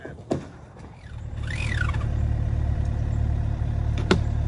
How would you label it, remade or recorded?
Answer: remade